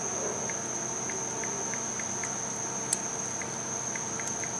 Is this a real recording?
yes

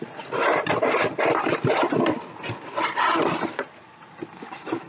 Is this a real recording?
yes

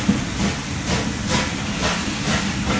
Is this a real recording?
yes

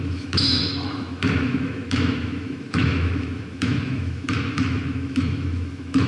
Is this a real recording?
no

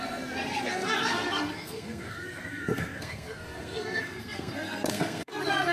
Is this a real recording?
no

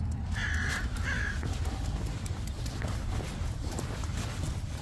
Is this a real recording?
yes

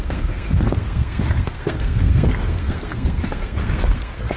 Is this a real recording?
no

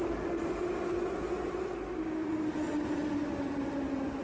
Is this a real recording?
yes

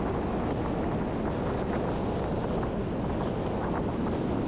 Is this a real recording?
yes